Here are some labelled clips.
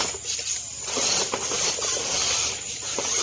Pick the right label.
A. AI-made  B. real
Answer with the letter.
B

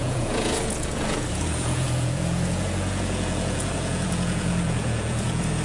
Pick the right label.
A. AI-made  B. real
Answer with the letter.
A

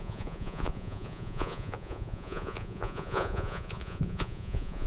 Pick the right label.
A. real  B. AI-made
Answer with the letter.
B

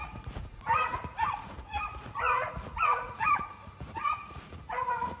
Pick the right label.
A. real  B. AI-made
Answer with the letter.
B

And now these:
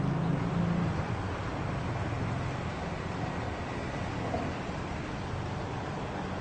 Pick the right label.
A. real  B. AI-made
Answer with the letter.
A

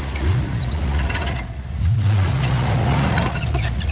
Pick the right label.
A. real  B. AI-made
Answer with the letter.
B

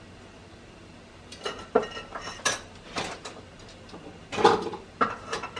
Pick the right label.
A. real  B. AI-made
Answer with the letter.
A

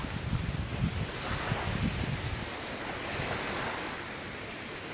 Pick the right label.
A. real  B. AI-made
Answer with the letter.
A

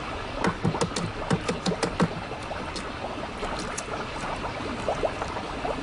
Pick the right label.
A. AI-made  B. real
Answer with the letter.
B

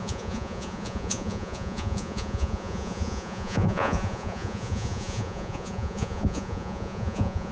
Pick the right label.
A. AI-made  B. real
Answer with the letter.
A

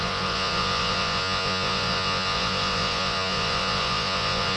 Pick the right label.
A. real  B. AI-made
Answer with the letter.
B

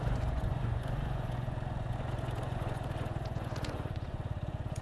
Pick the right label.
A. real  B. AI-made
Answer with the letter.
B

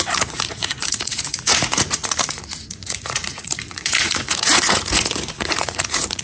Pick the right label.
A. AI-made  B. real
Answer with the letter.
A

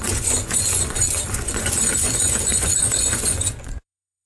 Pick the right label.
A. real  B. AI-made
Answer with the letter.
B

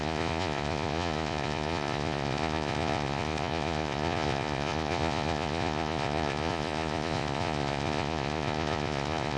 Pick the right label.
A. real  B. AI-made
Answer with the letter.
B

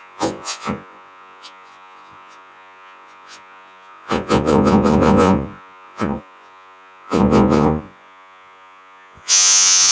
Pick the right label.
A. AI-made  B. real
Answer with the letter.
A